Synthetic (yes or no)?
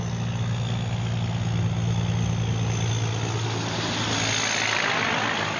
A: no